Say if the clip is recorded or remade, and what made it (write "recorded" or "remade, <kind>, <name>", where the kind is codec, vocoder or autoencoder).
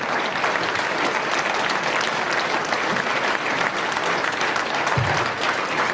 recorded